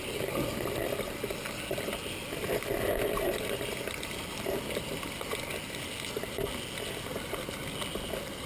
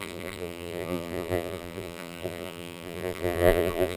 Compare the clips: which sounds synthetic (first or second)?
second